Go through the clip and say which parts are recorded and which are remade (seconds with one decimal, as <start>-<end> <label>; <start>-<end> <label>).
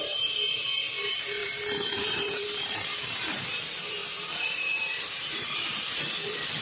0.0-6.6 remade